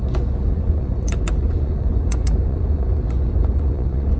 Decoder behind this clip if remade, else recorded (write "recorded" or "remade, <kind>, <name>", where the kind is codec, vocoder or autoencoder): remade, vocoder, Vocos